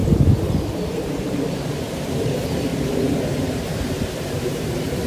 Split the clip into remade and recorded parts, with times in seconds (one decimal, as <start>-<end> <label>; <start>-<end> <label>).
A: 0.0-2.7 recorded; 2.7-5.1 remade